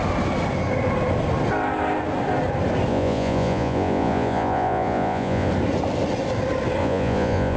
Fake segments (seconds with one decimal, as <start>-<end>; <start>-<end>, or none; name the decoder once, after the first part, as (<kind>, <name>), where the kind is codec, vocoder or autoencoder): 2.9-5.5 (vocoder, Vocos); 6.8-7.6